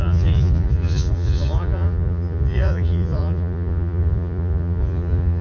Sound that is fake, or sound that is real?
fake